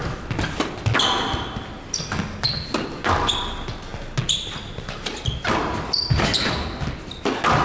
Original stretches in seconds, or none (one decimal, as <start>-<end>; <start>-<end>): 0.0-5.6; 6.5-7.6